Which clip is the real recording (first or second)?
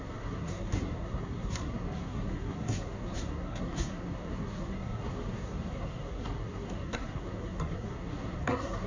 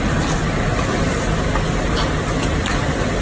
second